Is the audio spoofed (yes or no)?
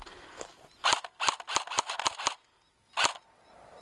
no